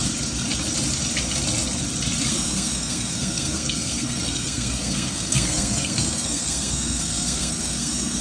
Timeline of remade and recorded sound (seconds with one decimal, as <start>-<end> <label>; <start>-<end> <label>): 0.0-2.3 recorded; 2.3-8.2 remade